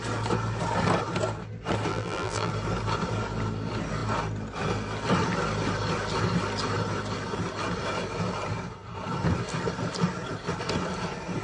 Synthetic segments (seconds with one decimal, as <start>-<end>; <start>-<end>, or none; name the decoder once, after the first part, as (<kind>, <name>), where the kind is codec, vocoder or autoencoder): 1.9-2.5 (vocoder, BigVGAN v2)